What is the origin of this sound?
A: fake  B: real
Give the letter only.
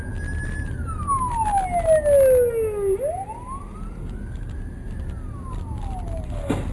B